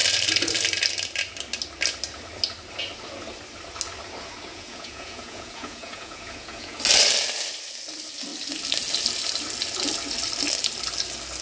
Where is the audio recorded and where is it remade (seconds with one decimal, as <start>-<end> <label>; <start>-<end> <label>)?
0.0-4.5 recorded; 4.5-6.8 remade; 6.8-11.4 recorded